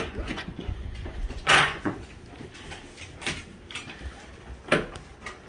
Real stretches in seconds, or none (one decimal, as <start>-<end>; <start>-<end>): 2.1-5.5